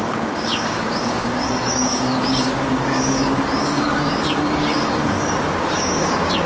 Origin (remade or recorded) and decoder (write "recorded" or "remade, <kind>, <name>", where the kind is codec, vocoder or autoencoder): remade, codec, DAC